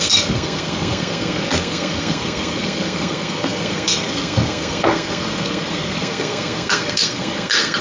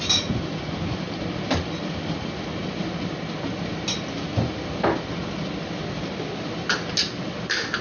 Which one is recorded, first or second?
second